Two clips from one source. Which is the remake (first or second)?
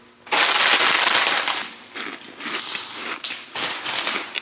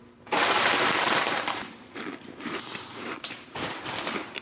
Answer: second